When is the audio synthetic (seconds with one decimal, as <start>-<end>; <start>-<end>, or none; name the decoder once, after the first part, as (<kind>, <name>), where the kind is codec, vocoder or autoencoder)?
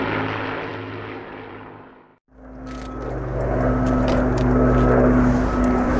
none